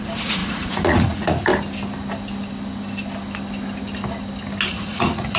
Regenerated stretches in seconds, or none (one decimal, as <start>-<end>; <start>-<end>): 0.0-1.5; 4.7-5.4